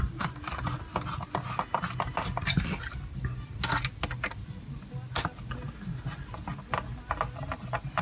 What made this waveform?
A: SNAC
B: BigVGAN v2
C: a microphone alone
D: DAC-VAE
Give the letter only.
C